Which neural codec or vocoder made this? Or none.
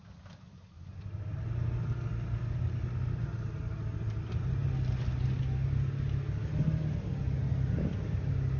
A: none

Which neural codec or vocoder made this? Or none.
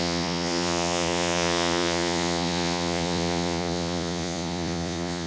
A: vocoder, Vocos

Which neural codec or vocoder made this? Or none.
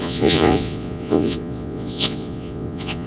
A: vocoder, Vocos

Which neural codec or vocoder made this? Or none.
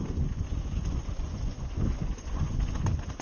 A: vocoder, Vocos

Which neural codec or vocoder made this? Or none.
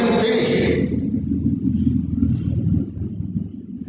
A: none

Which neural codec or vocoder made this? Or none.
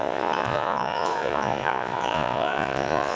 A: vocoder, Vocos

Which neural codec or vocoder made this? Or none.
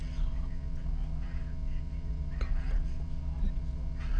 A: vocoder, Vocos